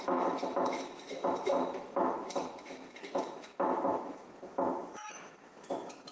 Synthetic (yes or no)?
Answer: yes